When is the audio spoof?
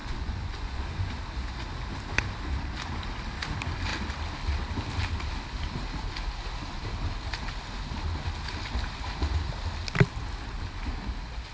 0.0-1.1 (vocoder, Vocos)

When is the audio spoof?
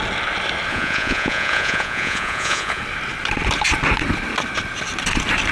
0.7-2.8 (vocoder, Vocos)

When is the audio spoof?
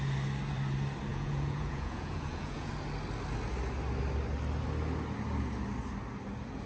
1.1-2.7 (vocoder, Vocos)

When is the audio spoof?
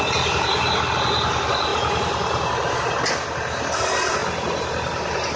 none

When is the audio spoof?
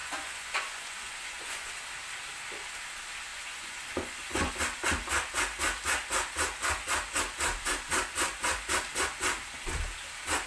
0.0-1.7 (vocoder, Vocos); 3.3-4.5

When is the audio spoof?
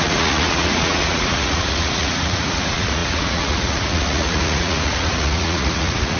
0.0-6.2 (vocoder, Vocos)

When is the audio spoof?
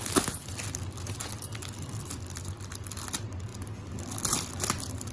none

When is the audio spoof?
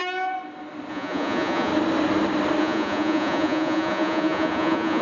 0.9-1.7 (vocoder, Vocos); 2.6-5.0